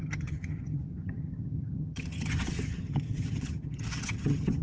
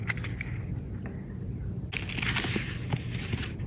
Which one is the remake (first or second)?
first